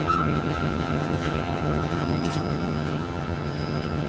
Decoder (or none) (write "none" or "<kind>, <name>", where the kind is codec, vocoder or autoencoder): vocoder, HiFi-GAN